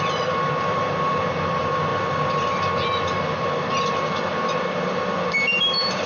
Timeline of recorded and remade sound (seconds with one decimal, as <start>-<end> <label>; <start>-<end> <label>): 0.0-1.9 remade; 1.9-5.3 recorded; 5.3-6.1 remade